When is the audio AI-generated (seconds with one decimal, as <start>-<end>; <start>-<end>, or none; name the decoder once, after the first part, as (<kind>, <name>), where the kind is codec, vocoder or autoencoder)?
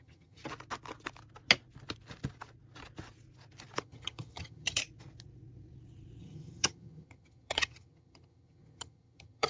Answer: 0.0-0.4 (vocoder, HiFi-GAN); 3.8-4.8; 6.2-9.5